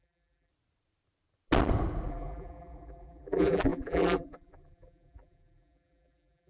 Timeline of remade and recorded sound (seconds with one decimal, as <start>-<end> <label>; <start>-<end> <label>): 0.0-0.5 remade; 0.5-2.1 recorded; 2.1-6.5 remade